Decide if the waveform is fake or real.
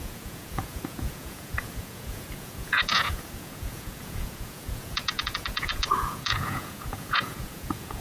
fake